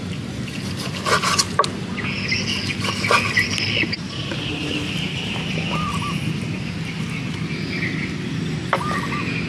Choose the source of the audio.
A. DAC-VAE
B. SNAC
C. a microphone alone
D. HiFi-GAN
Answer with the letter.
C